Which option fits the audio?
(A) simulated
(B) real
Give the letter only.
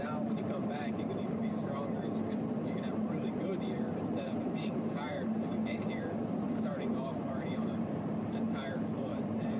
A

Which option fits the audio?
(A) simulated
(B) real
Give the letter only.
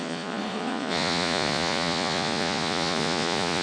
A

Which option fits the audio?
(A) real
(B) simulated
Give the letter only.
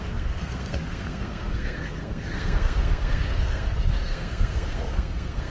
B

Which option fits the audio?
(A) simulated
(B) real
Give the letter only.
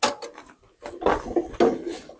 B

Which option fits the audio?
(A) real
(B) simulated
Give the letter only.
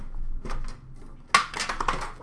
A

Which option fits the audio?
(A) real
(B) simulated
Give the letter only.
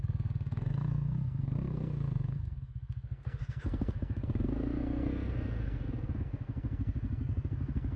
B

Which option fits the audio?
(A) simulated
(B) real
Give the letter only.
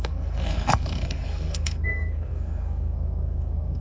A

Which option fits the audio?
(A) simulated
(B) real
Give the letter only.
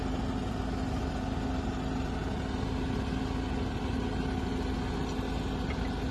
B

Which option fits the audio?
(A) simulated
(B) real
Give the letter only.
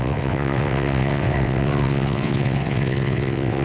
A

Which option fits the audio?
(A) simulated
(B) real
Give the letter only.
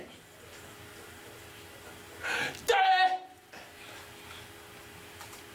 B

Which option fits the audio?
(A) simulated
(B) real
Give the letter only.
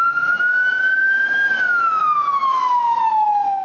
A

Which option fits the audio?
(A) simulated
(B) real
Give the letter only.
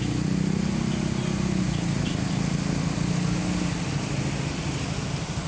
B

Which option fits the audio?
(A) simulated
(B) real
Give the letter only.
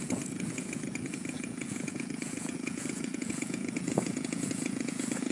A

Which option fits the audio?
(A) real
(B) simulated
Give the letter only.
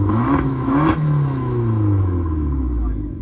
B